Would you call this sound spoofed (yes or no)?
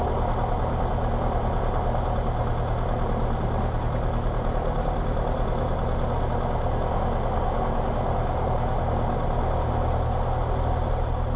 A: no